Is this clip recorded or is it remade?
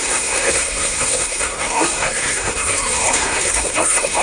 remade